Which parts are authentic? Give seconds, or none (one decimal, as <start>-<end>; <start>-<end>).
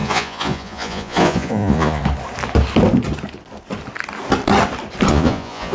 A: 2.0-5.1